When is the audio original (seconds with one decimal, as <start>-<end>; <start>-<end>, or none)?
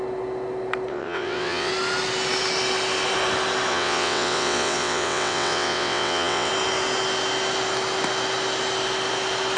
0.0-0.9; 1.7-3.7; 6.5-9.6